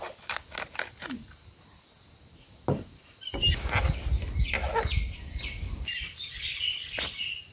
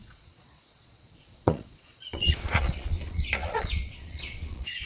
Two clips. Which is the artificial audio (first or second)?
second